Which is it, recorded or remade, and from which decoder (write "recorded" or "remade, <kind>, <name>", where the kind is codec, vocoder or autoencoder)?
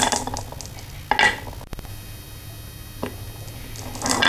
recorded